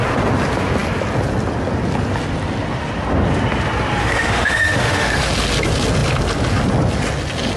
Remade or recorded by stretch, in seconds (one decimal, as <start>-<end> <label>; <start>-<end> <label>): 0.0-4.0 recorded; 4.0-5.2 remade; 5.2-7.6 recorded